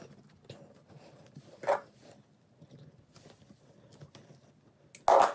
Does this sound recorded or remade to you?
recorded